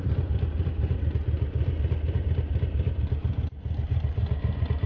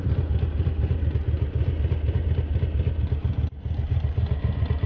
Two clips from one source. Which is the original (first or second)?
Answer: second